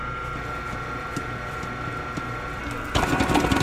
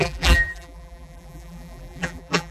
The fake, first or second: second